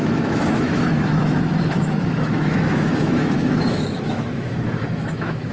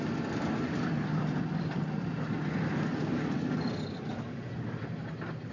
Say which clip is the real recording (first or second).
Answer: second